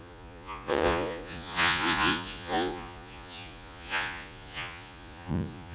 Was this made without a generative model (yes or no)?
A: no